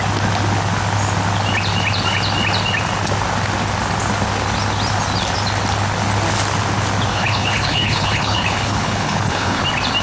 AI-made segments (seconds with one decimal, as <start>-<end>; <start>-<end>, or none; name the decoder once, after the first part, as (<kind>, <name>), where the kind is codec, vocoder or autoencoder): 7.1-9.6 (codec, HILCodec)